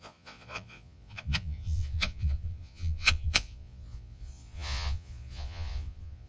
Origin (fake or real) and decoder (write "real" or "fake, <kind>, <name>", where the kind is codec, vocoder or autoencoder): fake, vocoder, Vocos